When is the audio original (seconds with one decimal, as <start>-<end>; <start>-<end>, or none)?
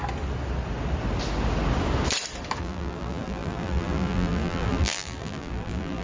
0.0-2.6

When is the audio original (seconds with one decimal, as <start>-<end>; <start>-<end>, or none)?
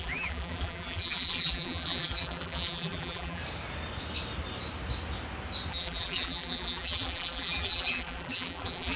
3.4-5.7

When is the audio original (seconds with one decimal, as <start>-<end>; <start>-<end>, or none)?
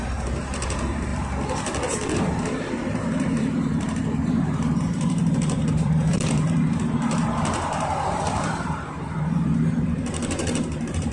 1.1-2.2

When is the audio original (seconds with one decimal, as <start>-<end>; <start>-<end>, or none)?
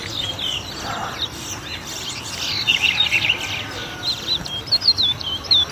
0.0-5.7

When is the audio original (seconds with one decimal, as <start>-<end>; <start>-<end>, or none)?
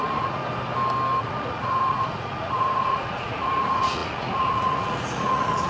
0.4-1.2